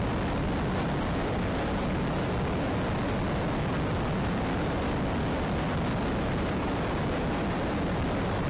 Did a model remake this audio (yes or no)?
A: no